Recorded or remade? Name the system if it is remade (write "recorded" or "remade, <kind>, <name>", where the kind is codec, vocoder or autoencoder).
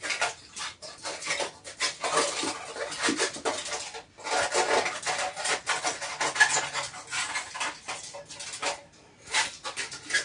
recorded